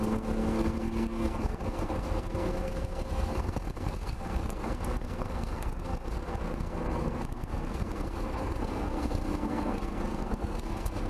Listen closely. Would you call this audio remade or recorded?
remade